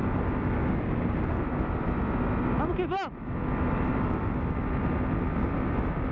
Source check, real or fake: real